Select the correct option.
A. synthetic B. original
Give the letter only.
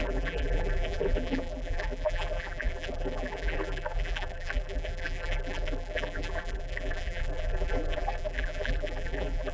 A